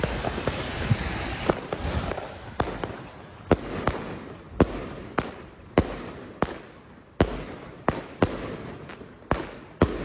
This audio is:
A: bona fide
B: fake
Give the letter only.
A